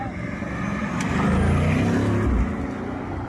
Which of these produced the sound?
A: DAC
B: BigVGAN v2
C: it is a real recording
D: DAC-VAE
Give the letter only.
C